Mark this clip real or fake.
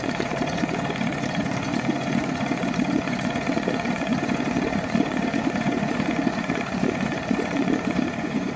fake